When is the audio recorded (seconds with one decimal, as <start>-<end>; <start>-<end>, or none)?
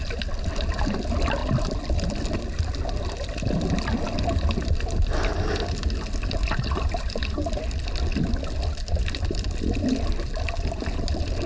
0.0-11.5